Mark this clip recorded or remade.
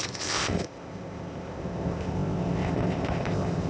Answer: remade